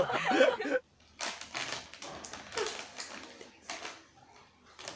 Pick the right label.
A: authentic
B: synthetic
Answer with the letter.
A